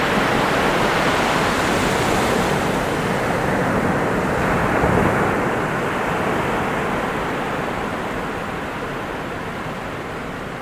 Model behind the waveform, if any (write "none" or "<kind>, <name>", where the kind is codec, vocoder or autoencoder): none